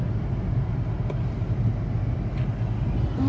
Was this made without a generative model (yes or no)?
yes